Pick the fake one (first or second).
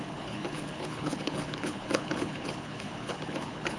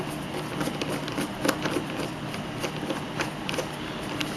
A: first